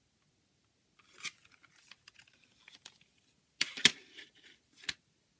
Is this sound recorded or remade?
recorded